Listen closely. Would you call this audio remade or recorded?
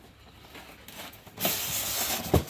recorded